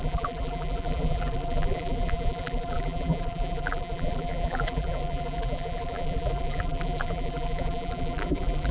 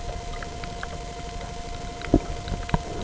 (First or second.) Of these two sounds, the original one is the second